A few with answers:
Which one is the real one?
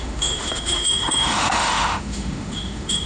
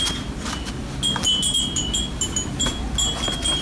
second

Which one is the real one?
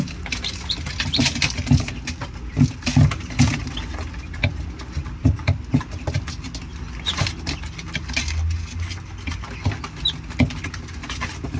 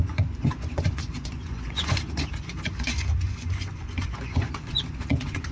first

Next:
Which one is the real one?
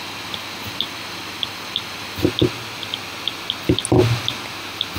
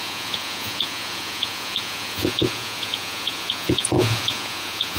first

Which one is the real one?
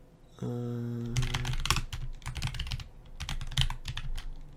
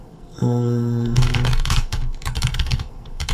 first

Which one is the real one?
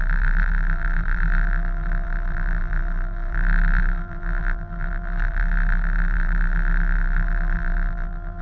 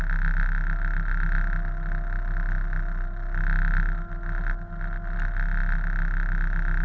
second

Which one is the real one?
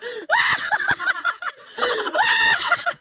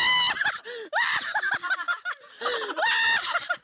second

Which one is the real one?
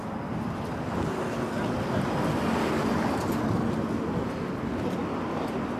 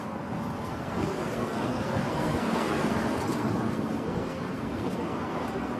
first